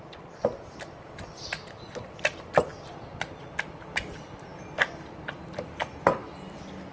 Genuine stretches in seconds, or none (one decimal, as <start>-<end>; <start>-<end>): 0.0-6.9